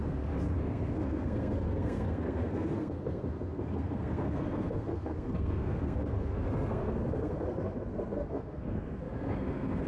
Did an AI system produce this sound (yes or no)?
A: yes